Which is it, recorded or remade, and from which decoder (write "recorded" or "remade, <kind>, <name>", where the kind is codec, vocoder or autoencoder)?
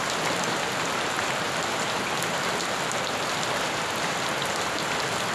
recorded